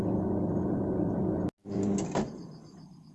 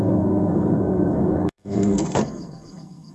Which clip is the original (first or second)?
first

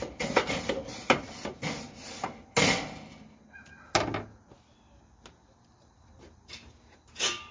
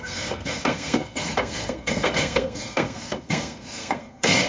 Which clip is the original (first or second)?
first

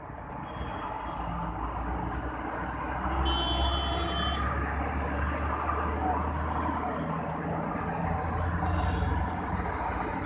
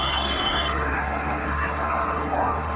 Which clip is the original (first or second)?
first